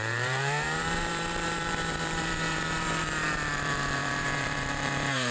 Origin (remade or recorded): remade